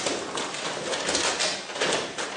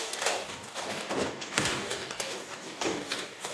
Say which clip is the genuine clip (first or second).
first